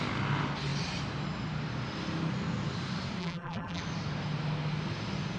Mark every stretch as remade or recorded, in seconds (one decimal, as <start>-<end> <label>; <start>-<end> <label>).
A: 0.0-3.2 recorded; 3.2-3.8 remade; 3.8-5.4 recorded